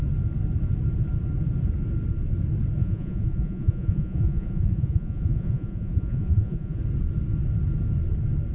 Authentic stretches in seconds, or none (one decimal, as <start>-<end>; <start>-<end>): 0.0-2.8; 6.8-8.5